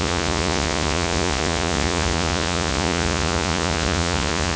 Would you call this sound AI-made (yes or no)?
yes